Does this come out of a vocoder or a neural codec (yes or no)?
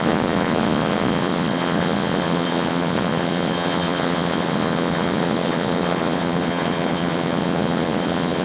yes